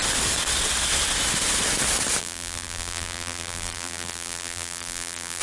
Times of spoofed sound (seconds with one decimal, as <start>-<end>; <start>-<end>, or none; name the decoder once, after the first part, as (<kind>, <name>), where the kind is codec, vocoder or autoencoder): 2.2-5.4 (vocoder, BigVGAN v2)